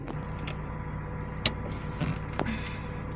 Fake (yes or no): no